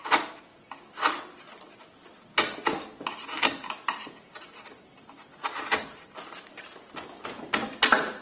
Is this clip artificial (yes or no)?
no